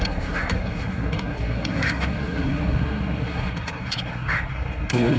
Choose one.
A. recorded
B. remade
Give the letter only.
B